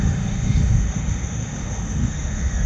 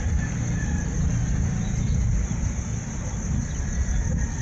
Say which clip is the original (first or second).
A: second